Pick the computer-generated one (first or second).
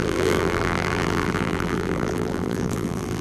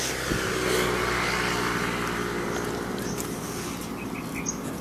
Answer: first